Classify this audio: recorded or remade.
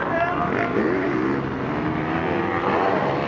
recorded